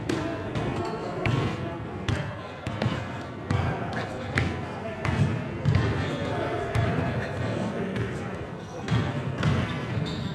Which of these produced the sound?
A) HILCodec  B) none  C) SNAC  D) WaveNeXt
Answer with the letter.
C